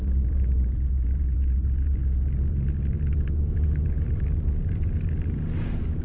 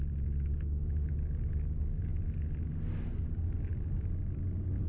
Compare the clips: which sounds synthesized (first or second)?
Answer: first